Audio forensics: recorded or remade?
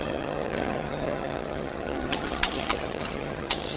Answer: remade